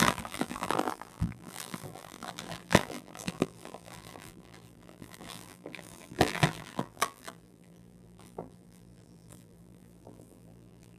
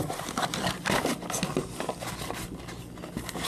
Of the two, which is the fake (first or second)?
first